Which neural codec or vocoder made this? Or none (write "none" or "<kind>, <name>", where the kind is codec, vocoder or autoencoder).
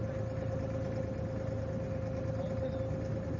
none